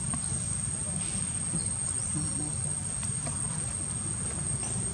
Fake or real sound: real